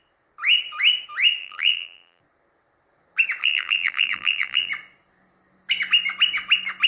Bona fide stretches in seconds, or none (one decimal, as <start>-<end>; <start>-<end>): 0.0-1.4; 2.2-3.4; 4.7-6.9